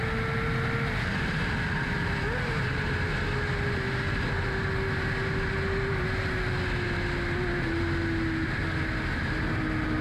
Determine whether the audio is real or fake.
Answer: real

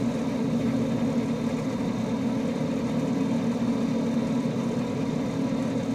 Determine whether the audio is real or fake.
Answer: real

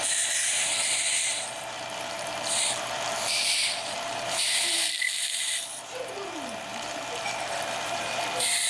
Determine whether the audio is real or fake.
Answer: fake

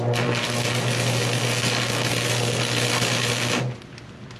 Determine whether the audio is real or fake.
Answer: real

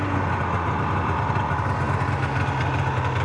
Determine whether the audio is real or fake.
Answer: real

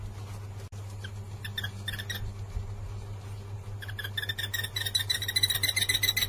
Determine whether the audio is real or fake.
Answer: real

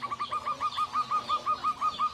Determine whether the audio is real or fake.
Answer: real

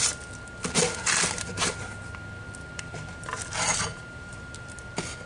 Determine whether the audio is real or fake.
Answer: fake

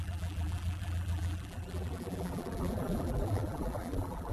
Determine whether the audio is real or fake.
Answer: fake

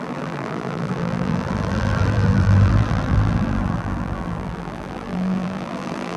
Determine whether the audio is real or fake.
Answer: fake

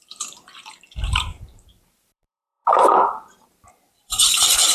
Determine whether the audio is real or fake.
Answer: fake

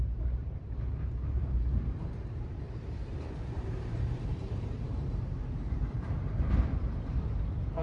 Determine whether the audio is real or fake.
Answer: fake